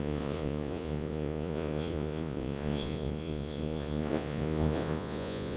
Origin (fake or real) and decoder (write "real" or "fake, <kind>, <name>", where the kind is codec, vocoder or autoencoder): fake, vocoder, Vocos